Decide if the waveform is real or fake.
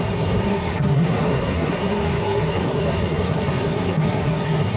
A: fake